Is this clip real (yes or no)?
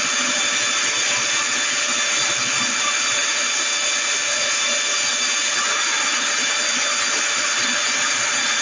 yes